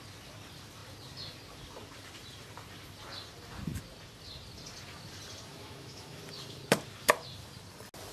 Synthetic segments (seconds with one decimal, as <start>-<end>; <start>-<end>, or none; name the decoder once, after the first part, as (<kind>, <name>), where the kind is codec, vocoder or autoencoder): 5.5-6.2 (autoencoder, DAC-VAE)